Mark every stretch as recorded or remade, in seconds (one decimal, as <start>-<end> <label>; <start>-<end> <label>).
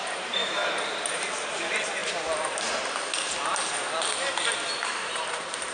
0.0-2.0 remade; 2.0-4.6 recorded; 4.6-5.7 remade